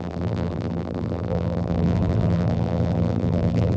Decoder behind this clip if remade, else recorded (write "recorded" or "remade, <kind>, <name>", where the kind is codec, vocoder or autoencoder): remade, vocoder, BigVGAN v2